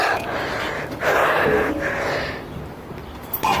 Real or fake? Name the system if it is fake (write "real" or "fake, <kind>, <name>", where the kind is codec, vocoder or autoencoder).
real